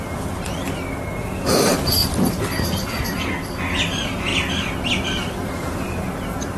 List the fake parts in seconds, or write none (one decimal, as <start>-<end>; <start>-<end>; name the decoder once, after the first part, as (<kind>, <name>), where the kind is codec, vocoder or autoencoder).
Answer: 2.0-3.6 (vocoder, BigVGAN v2); 4.3-6.6